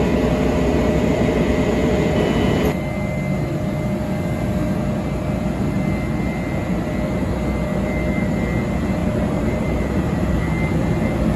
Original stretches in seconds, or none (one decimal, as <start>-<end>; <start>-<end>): 0.0-9.0; 10.4-11.4